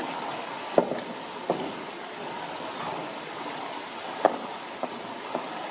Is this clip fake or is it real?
real